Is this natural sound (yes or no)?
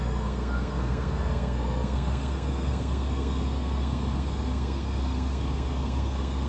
no